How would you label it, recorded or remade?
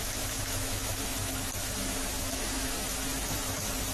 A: remade